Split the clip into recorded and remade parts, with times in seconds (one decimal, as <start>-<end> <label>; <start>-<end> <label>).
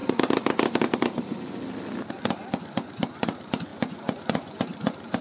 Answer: 0.0-2.1 recorded; 2.1-5.2 remade